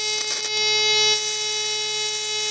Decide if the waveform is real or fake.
real